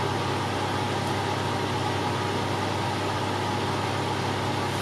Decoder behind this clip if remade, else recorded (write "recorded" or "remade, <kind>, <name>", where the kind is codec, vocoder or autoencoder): recorded